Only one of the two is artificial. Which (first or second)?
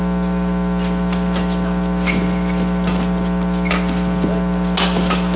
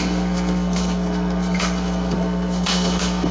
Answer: second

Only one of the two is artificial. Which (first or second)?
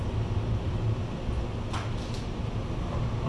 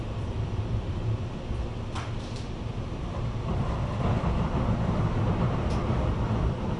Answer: second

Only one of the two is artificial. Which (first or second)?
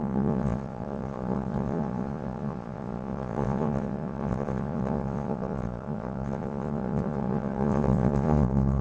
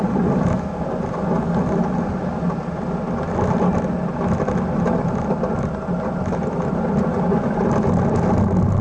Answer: first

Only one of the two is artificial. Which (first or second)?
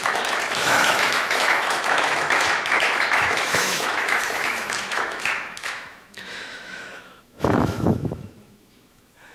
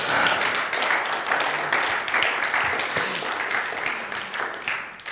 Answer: first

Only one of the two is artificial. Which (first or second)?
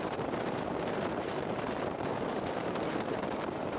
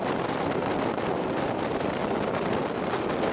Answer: first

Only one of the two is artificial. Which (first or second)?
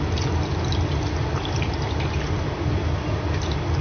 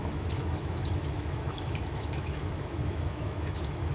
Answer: second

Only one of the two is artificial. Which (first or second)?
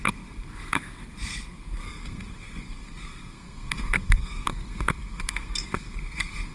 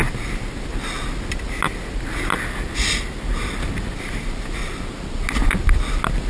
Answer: first